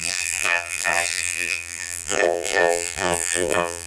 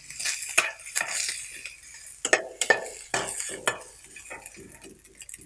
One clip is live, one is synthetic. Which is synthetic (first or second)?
first